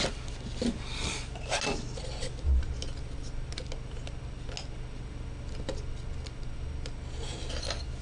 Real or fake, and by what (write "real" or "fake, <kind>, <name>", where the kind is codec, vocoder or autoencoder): real